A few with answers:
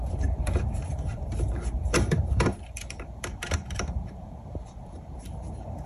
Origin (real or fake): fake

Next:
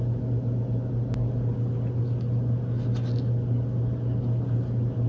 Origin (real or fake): real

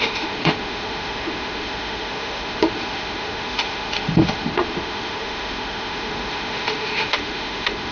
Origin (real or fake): fake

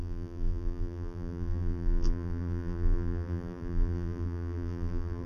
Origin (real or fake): fake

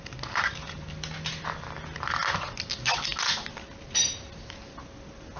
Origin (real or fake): real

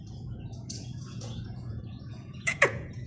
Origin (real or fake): fake